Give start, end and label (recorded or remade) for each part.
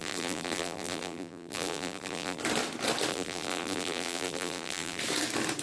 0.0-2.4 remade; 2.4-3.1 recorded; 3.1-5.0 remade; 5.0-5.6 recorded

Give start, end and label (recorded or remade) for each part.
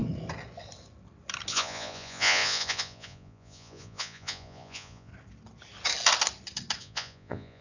0.0-1.5 recorded; 1.5-5.1 remade; 5.1-6.8 recorded; 6.8-7.6 remade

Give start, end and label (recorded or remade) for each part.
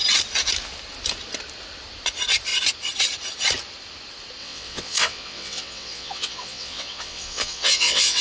0.0-4.4 recorded; 4.4-8.2 remade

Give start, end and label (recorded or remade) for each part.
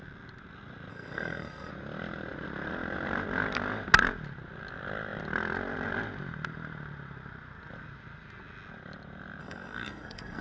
0.0-0.9 recorded; 0.9-1.7 remade; 1.7-9.4 recorded; 9.4-10.4 remade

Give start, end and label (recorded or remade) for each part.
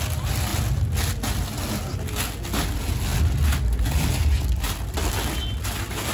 0.0-6.1 recorded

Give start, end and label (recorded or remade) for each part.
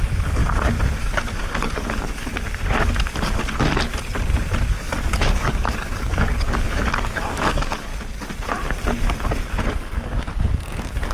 0.0-0.4 remade; 0.4-1.0 recorded; 1.0-2.3 remade; 2.3-4.7 recorded; 4.7-7.9 remade; 7.9-9.7 recorded; 9.7-11.1 remade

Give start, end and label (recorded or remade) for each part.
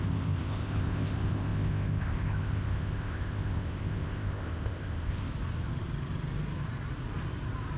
0.0-5.3 remade; 5.3-7.8 recorded